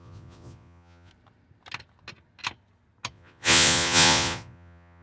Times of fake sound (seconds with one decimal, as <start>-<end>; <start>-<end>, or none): 0.0-1.1; 3.1-5.0